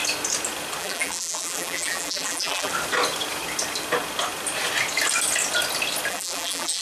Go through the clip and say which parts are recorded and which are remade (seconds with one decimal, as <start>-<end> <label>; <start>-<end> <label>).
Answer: 0.0-0.8 recorded; 0.8-2.7 remade; 2.7-6.1 recorded; 6.1-6.8 remade